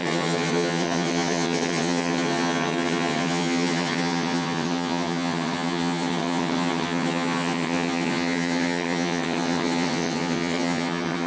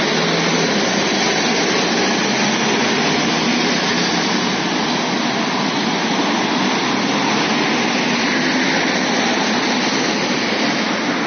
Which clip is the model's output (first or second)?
first